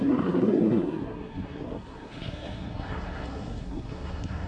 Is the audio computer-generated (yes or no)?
yes